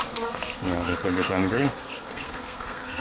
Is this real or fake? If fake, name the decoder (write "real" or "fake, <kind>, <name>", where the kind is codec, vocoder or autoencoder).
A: fake, codec, SNAC